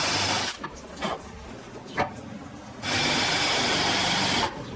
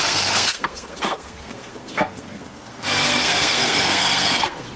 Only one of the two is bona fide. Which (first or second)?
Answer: first